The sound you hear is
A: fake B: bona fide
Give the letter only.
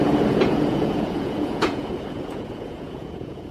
A